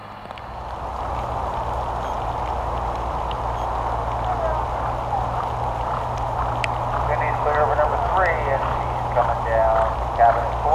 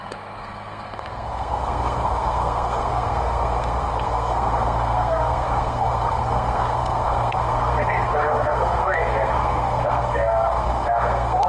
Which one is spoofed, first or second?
second